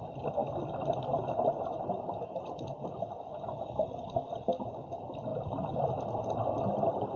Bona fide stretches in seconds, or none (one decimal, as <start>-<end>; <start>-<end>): 0.0-7.2